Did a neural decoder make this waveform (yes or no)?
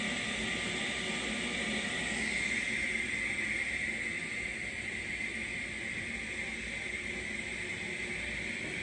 no